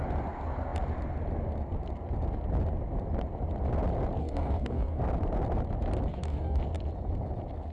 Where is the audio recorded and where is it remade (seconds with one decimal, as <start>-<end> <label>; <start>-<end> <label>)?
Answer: 0.0-4.2 recorded; 4.2-5.0 remade; 5.0-6.1 recorded; 6.1-6.6 remade; 6.6-7.7 recorded